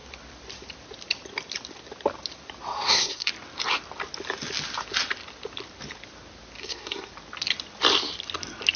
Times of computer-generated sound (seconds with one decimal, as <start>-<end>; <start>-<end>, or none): 2.7-3.3; 6.6-7.1